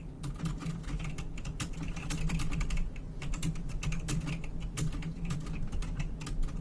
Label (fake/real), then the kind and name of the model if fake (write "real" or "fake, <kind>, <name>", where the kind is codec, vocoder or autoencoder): real